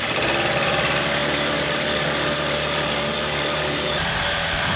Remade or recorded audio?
remade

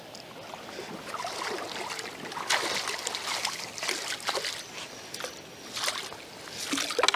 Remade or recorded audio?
recorded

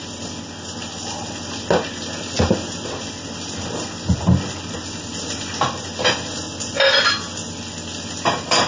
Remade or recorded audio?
recorded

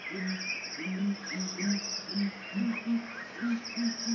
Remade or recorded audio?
recorded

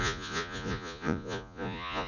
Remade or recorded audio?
remade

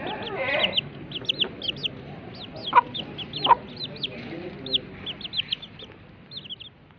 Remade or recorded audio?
recorded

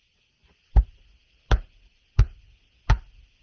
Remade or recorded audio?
recorded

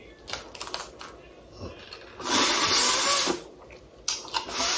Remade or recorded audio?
recorded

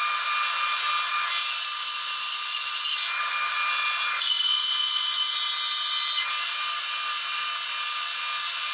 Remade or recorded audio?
recorded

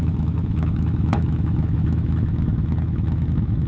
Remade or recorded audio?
remade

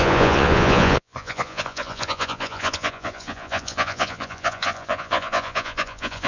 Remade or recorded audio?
remade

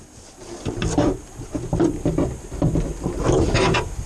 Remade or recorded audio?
recorded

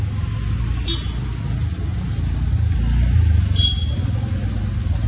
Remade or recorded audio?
recorded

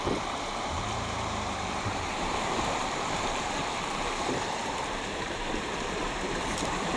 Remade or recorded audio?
remade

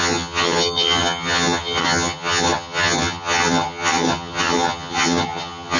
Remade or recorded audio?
remade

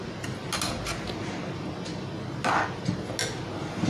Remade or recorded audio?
recorded